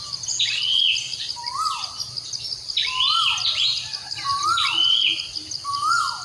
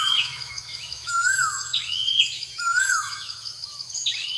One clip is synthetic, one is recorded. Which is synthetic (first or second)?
second